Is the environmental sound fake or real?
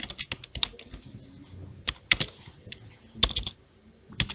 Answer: real